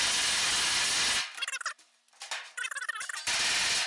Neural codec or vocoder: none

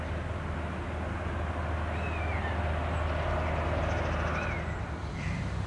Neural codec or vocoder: none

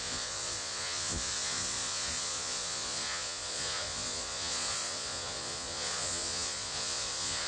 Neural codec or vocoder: vocoder, Vocos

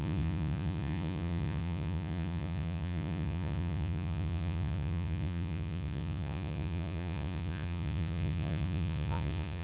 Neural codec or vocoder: vocoder, Vocos